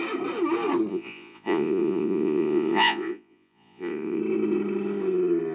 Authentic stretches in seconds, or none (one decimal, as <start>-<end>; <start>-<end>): 0.0-0.9; 4.2-5.5